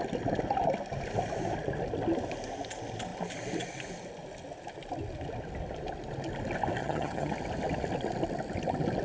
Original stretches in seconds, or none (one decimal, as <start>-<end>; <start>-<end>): 0.0-6.8; 7.3-9.0